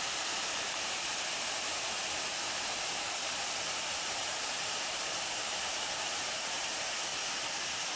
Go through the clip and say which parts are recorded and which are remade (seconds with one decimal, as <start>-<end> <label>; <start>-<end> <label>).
0.0-8.0 remade